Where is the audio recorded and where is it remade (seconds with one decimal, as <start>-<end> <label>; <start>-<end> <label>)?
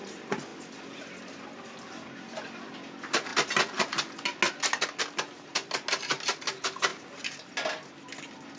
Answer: 0.0-8.6 recorded